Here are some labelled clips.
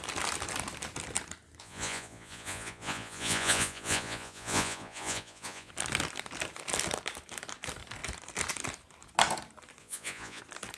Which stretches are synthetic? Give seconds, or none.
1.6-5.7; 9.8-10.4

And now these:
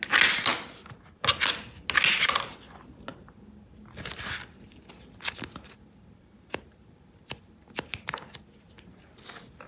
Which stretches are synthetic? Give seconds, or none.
none

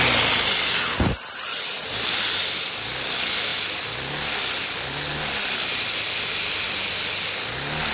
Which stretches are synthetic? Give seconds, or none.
none

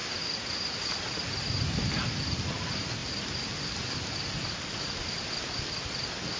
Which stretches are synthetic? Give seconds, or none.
none

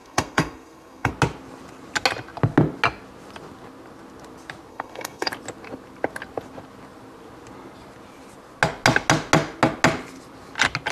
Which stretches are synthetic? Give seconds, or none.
0.0-1.1; 4.7-5.3

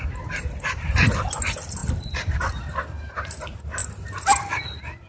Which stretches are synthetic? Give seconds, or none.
none

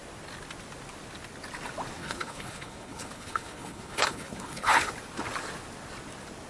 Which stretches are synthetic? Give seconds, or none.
2.0-4.9